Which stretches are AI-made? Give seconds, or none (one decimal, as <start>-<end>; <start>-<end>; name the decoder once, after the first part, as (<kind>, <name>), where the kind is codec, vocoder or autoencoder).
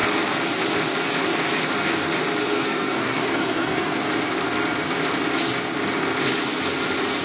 2.4-4.1 (codec, SNAC)